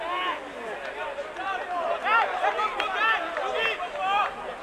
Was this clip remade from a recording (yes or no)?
no